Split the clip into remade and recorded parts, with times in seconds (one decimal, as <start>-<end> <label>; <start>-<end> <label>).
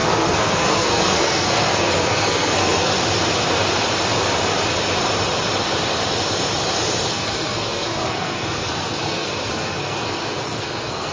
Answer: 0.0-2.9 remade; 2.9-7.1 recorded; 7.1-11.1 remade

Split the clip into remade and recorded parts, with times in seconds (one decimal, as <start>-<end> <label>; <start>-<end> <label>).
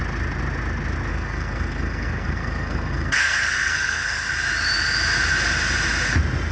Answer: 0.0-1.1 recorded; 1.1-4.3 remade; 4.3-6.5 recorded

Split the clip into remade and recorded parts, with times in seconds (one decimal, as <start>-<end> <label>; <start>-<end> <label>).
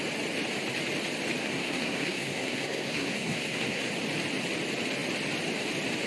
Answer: 0.0-1.4 recorded; 1.4-3.8 remade; 3.8-6.1 recorded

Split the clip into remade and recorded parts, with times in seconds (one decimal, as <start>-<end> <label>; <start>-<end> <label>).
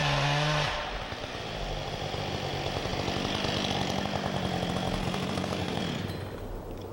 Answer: 0.0-5.0 recorded; 5.0-5.8 remade; 5.8-6.9 recorded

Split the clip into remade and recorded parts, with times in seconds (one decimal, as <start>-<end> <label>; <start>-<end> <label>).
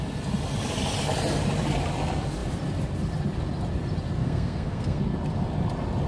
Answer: 0.0-4.2 recorded; 4.2-5.0 remade; 5.0-6.1 recorded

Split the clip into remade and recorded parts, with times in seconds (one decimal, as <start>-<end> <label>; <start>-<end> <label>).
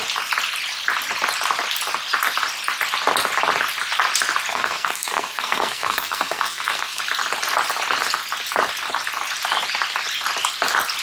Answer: 0.0-4.5 recorded; 4.5-7.0 remade; 7.0-11.0 recorded